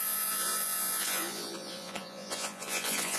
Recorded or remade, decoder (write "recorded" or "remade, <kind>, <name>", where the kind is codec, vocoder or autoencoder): remade, vocoder, Vocos